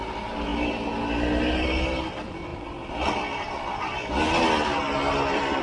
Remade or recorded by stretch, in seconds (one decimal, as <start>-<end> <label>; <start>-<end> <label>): 0.0-5.6 recorded